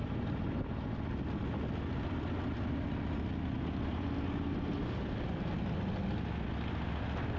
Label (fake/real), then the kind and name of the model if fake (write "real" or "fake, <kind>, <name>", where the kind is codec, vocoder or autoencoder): real